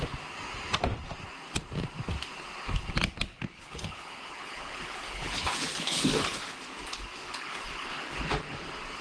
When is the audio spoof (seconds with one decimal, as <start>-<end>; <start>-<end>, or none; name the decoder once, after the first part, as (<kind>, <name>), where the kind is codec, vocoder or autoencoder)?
3.3-6.6 (codec, HILCodec); 7.2-8.6

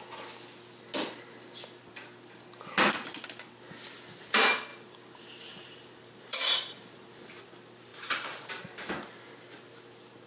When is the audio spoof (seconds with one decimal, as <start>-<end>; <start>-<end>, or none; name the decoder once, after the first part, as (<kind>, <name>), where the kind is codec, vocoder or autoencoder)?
4.7-7.4 (vocoder, BigVGAN v2); 7.9-8.5